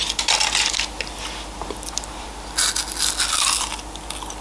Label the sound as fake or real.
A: real